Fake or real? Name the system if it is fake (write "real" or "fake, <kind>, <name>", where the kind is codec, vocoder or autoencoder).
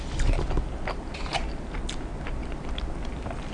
real